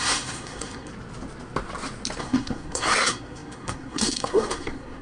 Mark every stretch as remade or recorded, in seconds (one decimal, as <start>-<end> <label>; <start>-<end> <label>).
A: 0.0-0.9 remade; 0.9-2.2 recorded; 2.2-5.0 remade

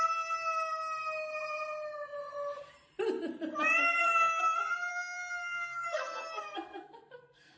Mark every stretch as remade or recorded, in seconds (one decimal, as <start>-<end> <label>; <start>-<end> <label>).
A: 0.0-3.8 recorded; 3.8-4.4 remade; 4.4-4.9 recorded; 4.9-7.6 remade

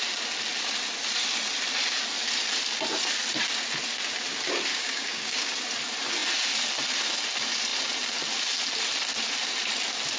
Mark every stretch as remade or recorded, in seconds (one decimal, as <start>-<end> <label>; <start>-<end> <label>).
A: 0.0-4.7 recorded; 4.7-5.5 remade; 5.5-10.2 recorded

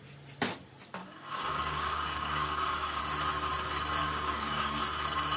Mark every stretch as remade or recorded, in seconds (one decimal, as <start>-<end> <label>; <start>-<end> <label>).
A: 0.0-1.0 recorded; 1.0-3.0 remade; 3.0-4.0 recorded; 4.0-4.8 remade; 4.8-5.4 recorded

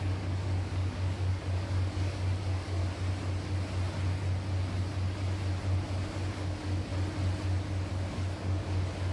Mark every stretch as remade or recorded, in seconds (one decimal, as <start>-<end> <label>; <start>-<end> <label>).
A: 0.0-2.8 remade; 2.8-6.3 recorded; 6.3-6.9 remade; 6.9-7.9 recorded; 7.9-9.1 remade

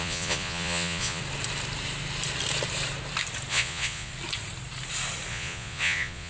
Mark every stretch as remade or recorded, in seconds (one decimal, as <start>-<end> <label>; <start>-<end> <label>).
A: 0.0-1.2 remade; 1.2-3.5 recorded; 3.5-4.1 remade; 4.1-5.3 recorded; 5.3-6.3 remade